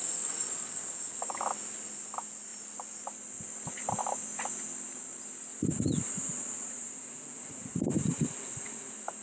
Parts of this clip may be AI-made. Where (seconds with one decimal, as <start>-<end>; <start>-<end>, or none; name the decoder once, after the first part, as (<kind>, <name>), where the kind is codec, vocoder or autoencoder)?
5.5-8.3 (vocoder, Vocos)